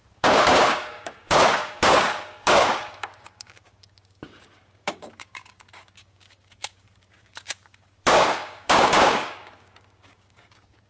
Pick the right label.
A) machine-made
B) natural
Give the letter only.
A